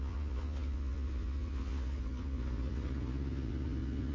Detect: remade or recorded remade